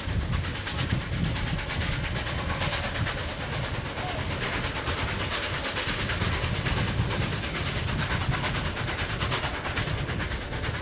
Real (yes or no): yes